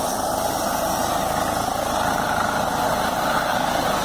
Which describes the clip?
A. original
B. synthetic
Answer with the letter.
A